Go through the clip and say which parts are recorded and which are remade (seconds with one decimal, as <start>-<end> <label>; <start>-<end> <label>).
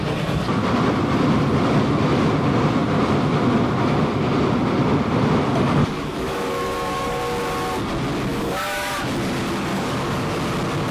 0.0-5.8 recorded; 5.8-7.2 remade; 7.2-8.3 recorded; 8.3-8.9 remade; 8.9-9.7 recorded; 9.7-10.4 remade; 10.4-10.9 recorded